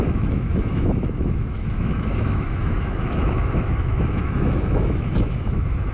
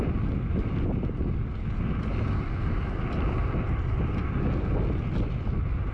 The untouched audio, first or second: second